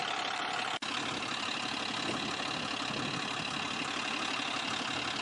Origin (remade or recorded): recorded